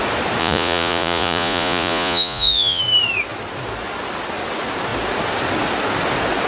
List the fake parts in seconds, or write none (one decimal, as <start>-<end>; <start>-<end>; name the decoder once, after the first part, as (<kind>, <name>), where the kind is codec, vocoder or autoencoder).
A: 0.4-2.8 (vocoder, Vocos)